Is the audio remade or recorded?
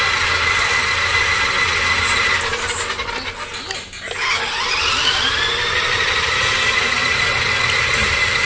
recorded